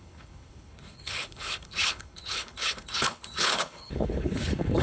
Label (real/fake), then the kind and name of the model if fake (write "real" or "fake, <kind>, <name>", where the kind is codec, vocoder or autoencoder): fake, codec, HILCodec